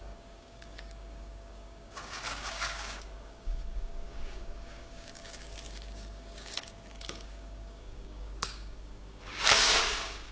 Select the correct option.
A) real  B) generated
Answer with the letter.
B